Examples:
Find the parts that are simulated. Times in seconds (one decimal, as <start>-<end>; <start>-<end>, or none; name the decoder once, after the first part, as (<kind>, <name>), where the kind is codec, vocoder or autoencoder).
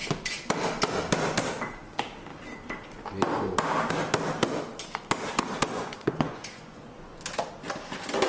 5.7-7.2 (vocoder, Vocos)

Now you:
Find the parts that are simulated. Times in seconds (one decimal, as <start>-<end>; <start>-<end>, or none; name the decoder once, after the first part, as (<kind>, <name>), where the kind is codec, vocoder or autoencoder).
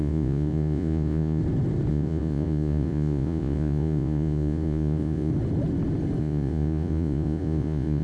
0.0-1.4 (vocoder, Vocos); 1.9-5.3; 6.2-8.0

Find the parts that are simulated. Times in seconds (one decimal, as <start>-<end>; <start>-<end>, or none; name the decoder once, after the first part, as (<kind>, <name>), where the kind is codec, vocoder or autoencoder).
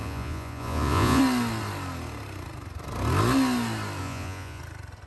0.0-1.2 (vocoder, Vocos); 4.0-4.6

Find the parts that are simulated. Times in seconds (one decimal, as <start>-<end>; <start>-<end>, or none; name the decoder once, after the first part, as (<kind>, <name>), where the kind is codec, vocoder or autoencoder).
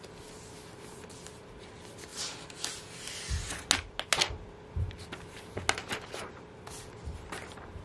none